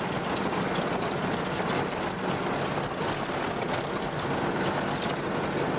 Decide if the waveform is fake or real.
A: real